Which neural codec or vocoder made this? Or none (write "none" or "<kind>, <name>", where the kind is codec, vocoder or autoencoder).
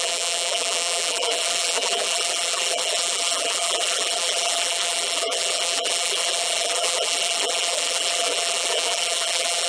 vocoder, BigVGAN v2